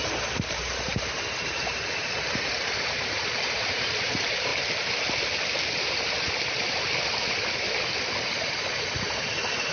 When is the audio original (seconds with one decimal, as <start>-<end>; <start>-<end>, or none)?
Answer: 4.5-8.4